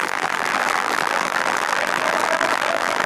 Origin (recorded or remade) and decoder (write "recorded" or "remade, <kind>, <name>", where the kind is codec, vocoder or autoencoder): remade, vocoder, BigVGAN v2